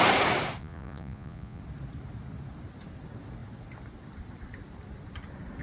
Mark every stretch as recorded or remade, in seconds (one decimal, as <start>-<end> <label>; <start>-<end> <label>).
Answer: 0.0-0.6 recorded; 0.6-1.6 remade; 1.6-5.6 recorded